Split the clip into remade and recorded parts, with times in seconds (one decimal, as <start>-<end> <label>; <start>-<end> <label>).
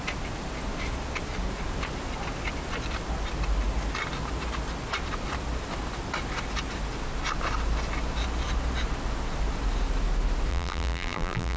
0.0-10.5 recorded; 10.5-11.6 remade